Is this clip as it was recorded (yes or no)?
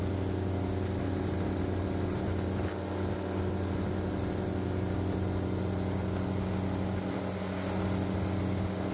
yes